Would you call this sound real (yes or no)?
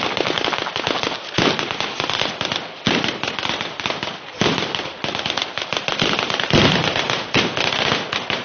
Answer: yes